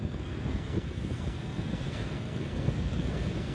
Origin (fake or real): fake